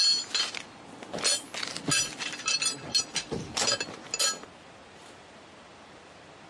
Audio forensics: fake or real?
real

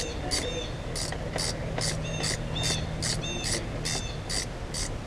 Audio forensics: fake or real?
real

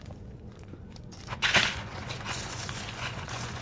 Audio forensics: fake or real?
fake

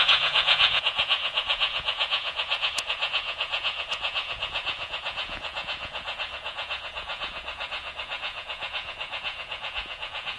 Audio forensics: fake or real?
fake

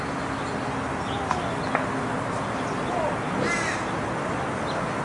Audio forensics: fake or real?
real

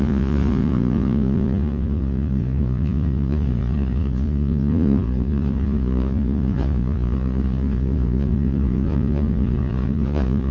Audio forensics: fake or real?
fake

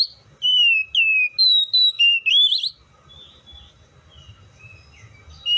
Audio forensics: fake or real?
real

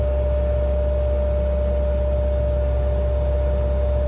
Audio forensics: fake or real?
real